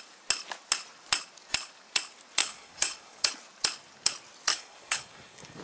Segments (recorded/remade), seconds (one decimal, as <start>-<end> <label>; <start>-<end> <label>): 0.0-2.4 recorded; 2.4-3.3 remade; 3.3-4.5 recorded; 4.5-5.6 remade